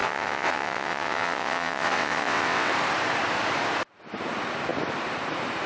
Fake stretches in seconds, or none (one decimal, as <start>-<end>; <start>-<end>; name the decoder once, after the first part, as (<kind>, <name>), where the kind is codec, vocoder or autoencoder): 0.0-2.7 (vocoder, WaveNeXt)